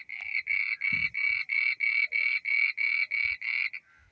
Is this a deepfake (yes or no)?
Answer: no